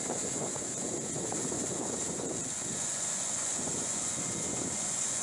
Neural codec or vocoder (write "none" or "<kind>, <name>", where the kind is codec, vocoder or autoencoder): vocoder, Vocos